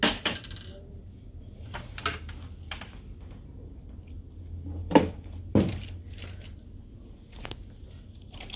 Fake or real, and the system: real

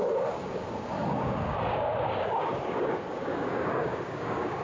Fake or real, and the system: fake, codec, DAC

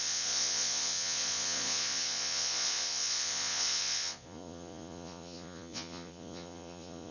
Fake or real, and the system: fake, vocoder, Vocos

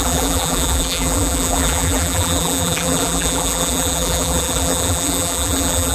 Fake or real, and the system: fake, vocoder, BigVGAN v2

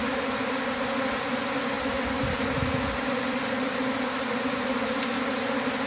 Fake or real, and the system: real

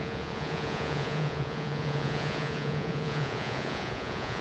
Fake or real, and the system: fake, vocoder, Vocos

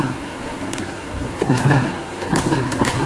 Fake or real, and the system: fake, codec, SNAC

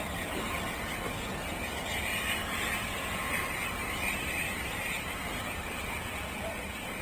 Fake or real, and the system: real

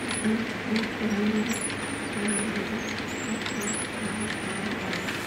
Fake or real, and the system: real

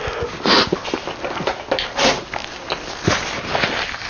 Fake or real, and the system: real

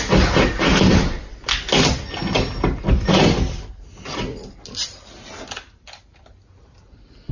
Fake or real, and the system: real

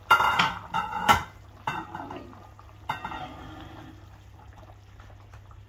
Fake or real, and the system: real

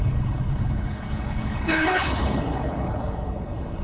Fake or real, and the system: fake, codec, HILCodec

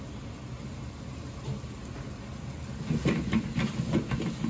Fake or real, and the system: real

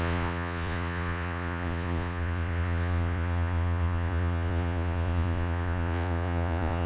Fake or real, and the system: fake, vocoder, Vocos